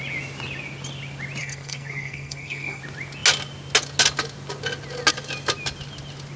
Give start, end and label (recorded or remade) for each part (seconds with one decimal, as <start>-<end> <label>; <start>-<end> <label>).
0.0-1.4 recorded; 1.4-2.8 remade; 2.8-6.4 recorded